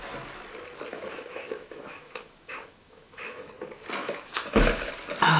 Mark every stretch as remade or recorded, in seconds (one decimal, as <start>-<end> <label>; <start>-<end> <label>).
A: 0.0-0.9 recorded; 0.9-3.5 remade; 3.5-4.0 recorded; 4.0-4.9 remade; 4.9-5.4 recorded